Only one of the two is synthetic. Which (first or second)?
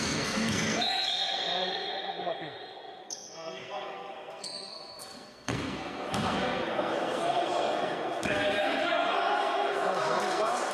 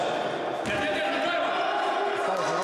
first